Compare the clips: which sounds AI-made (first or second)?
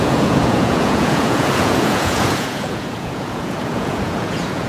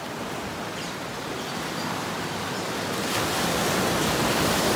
first